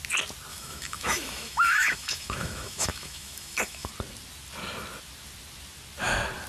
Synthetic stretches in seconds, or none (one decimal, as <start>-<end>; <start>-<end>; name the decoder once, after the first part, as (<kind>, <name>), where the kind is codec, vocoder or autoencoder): 0.5-3.9 (autoencoder, DAC-VAE)